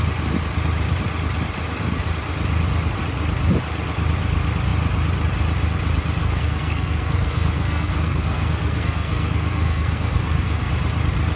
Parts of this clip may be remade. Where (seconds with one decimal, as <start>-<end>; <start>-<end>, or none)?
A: 6.2-10.7